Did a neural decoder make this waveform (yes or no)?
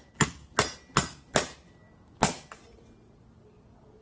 no